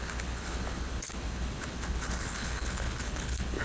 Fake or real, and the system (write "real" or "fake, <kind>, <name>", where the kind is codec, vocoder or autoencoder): fake, codec, HILCodec